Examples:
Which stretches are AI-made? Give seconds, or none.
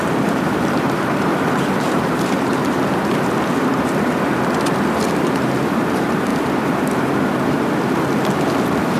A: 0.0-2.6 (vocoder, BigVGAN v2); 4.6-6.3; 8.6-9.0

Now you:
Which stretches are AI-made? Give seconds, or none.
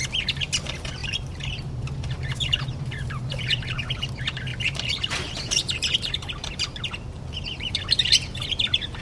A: 1.0-4.1 (vocoder, BigVGAN v2); 4.5-6.1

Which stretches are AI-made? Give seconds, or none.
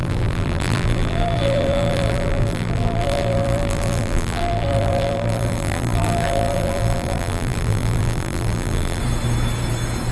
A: 0.0-9.0 (vocoder, BigVGAN v2)